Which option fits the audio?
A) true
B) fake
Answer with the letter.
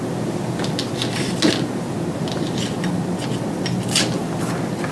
A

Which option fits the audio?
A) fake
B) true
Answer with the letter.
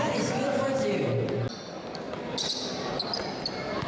B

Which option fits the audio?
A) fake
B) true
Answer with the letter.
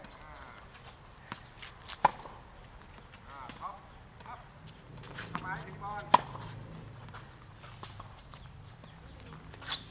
B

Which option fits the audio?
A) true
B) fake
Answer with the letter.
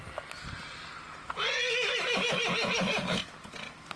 A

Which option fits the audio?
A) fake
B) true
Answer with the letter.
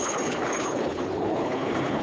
A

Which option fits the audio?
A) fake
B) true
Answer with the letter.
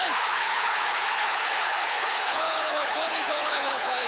A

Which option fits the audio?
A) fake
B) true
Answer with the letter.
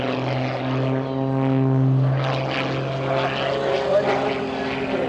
B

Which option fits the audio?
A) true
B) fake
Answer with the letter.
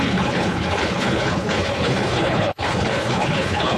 B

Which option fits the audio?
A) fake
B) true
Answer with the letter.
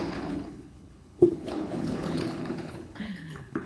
A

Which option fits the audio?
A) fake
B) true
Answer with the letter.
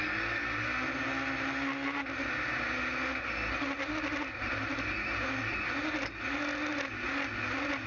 B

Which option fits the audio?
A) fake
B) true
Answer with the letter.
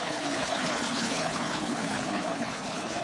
A